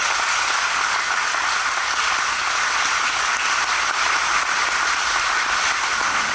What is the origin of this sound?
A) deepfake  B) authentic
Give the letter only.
B